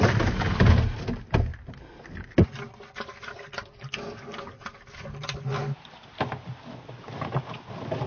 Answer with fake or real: real